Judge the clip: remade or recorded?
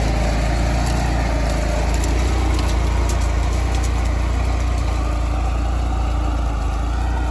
recorded